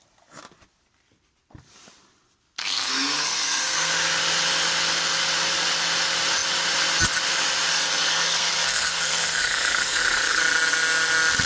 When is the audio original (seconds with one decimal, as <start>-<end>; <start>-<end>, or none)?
0.0-2.6; 3.9-7.7; 10.4-11.5